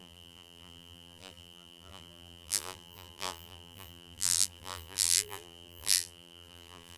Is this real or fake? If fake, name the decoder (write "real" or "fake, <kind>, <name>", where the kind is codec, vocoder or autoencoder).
fake, vocoder, BigVGAN v2